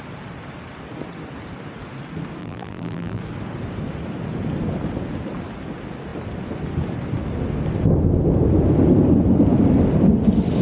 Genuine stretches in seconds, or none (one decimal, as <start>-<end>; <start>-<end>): 0.0-2.4; 3.2-10.6